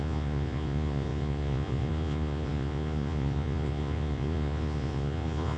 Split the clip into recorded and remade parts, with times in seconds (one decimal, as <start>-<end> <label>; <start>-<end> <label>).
0.0-5.6 remade